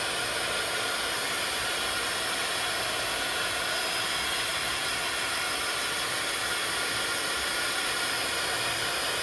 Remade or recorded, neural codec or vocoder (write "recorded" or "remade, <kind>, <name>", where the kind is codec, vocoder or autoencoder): recorded